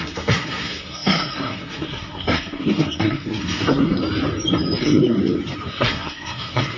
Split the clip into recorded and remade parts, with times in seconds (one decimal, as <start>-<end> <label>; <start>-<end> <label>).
0.0-4.0 remade; 4.0-4.8 recorded; 4.8-5.2 remade; 5.2-5.7 recorded; 5.7-6.8 remade